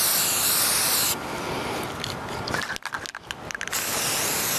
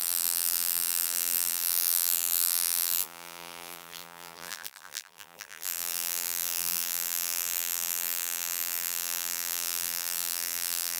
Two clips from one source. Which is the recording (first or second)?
first